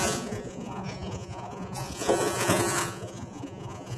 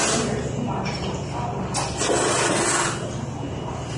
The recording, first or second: second